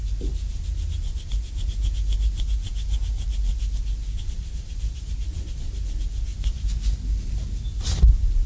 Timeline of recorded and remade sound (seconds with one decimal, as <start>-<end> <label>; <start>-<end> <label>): 0.0-8.5 recorded